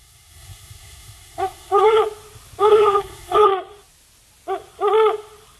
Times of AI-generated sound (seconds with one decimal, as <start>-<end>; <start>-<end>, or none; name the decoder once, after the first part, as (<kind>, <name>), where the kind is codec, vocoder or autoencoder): 0.0-2.0 (codec, SNAC); 2.6-3.5